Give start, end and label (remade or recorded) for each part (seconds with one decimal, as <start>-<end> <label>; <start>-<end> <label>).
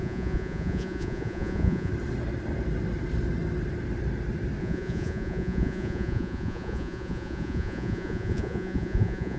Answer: 0.0-1.9 remade; 1.9-4.6 recorded; 4.6-9.4 remade